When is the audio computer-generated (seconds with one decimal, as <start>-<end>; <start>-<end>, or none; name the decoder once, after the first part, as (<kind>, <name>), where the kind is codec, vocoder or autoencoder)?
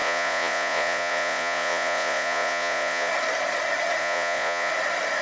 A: 0.0-3.1 (vocoder, Vocos); 4.0-4.7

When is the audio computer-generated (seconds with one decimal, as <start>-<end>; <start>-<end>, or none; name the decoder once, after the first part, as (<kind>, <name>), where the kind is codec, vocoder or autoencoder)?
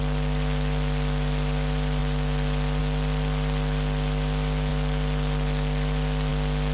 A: none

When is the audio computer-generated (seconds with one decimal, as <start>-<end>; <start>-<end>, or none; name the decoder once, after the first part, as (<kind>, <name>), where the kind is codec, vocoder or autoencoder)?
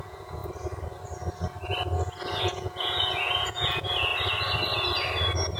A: 0.0-0.4 (vocoder, Vocos); 2.4-4.1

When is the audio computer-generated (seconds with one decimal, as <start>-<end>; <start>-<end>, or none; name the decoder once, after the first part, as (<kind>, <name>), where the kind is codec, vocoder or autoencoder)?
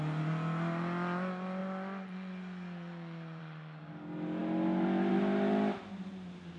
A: none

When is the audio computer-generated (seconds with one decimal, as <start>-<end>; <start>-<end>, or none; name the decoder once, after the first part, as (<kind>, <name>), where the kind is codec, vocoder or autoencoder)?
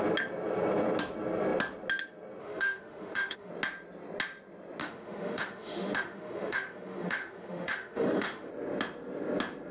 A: 2.4-3.5 (autoencoder, DAC-VAE); 4.8-8.5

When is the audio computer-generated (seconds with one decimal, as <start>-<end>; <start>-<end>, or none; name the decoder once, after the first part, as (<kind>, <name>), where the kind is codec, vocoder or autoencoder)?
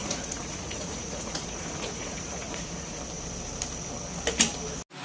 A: 0.0-3.0 (vocoder, Vocos)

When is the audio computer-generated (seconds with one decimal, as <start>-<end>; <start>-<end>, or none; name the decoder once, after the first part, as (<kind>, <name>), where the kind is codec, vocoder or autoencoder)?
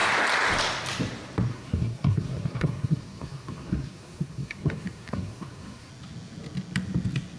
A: 1.5-5.9 (codec, SNAC)